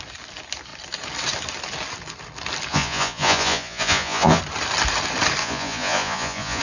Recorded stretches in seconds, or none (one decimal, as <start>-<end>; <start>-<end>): 0.0-2.7; 4.4-5.4